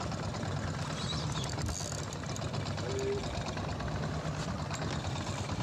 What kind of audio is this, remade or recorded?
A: recorded